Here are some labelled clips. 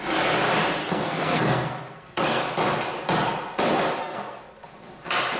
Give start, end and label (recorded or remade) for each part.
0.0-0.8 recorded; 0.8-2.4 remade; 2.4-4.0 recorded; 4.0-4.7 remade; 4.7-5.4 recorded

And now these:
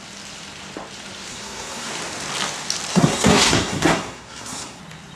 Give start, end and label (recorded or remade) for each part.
0.0-1.3 recorded; 1.3-1.9 remade; 1.9-2.9 recorded; 2.9-4.8 remade; 4.8-5.2 recorded

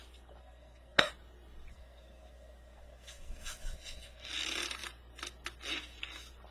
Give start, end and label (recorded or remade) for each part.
0.0-0.4 recorded; 0.4-1.1 remade; 1.1-1.7 recorded; 1.7-4.3 remade; 4.3-6.5 recorded